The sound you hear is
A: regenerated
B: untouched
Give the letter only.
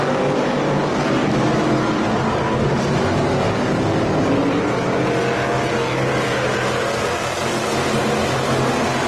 B